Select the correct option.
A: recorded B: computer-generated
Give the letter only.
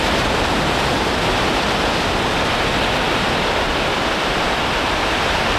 A